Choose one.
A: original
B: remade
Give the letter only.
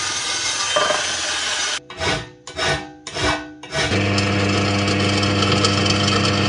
A